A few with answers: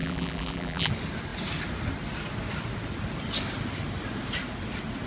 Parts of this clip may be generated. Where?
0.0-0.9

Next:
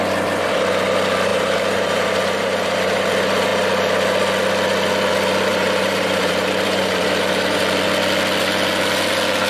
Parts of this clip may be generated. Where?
1.3-3.1; 5.5-7.6